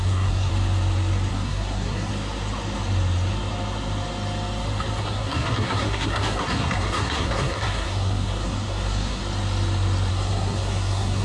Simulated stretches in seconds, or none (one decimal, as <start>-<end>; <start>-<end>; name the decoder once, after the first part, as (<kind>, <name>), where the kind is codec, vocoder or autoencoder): 0.0-0.5 (codec, SNAC); 1.3-2.1; 5.0-9.2; 10.1-11.2